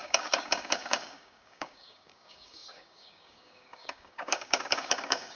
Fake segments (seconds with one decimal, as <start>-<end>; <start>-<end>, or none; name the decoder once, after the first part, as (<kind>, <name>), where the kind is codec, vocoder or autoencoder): 0.0-5.4 (codec, DAC)